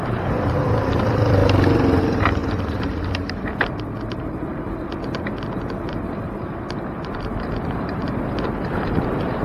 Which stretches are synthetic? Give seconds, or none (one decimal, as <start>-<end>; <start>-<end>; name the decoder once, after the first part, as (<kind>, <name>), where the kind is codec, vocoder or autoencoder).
0.0-1.4 (vocoder, BigVGAN v2); 2.0-4.5; 6.8-9.4